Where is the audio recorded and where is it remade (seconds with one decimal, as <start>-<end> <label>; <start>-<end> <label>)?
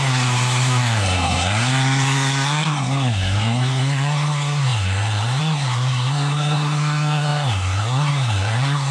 0.0-8.9 remade